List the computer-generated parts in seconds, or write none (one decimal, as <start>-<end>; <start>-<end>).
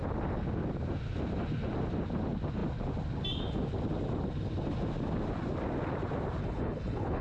6.4-7.2